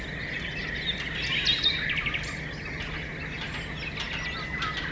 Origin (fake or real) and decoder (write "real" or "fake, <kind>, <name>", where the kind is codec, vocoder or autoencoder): real